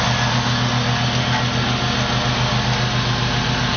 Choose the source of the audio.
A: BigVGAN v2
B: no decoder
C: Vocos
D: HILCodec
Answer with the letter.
B